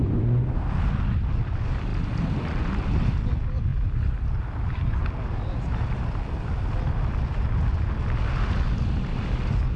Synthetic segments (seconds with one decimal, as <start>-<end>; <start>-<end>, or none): none